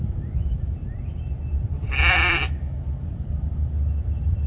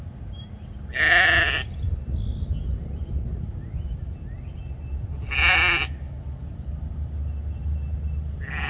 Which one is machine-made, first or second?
first